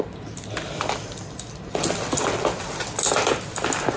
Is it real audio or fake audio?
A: real